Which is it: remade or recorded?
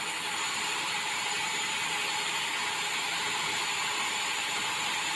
recorded